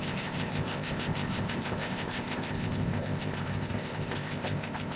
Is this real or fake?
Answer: fake